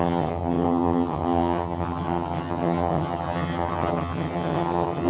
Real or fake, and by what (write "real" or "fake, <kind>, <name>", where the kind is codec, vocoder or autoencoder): fake, vocoder, HiFi-GAN